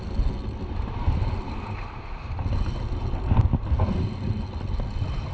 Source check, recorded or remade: recorded